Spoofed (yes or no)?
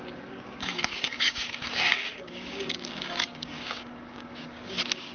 yes